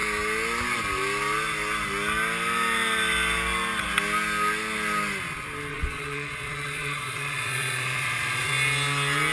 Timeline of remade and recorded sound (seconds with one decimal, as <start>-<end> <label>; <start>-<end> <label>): 0.0-5.7 recorded; 5.7-8.5 remade; 8.5-9.3 recorded